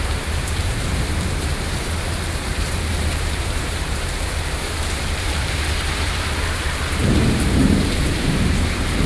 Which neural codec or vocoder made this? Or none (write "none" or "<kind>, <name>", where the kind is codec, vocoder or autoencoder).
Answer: vocoder, BigVGAN v2